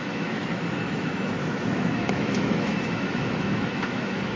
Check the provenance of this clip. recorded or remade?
remade